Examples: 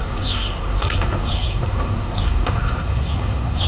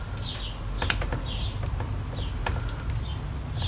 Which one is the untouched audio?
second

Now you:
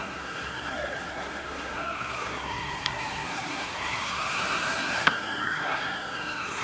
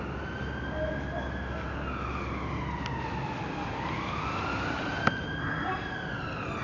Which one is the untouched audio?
second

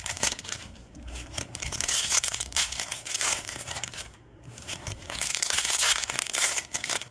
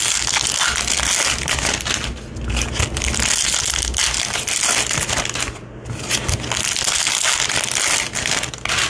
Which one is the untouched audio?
second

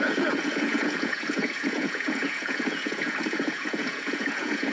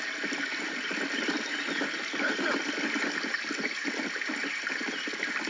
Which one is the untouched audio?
second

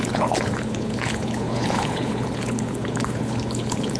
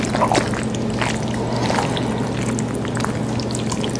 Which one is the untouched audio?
second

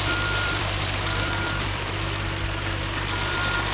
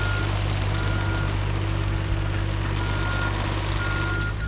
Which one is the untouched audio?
second